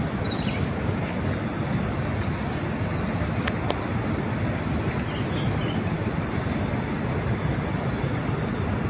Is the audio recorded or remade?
recorded